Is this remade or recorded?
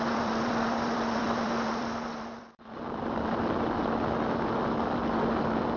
remade